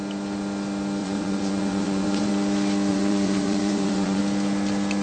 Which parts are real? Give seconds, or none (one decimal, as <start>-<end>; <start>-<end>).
0.0-1.0; 2.3-2.9; 4.2-5.0